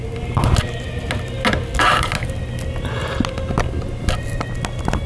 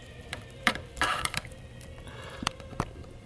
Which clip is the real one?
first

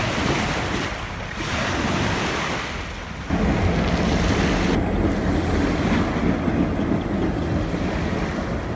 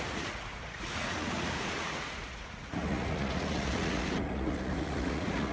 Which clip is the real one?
first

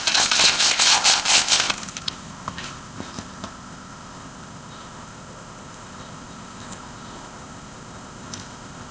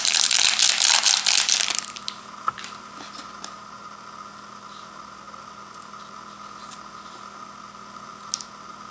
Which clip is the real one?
second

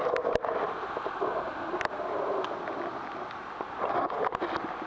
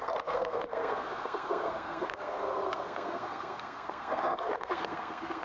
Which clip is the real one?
first